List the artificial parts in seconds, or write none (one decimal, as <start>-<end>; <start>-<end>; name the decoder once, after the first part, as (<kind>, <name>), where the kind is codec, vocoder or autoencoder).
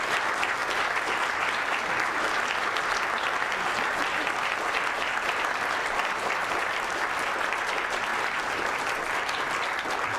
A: 5.1-6.5 (vocoder, BigVGAN v2)